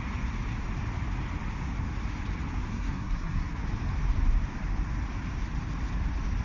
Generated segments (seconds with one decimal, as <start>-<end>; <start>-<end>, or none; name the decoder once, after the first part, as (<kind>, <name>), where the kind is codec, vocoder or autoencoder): 2.7-3.5 (codec, SNAC)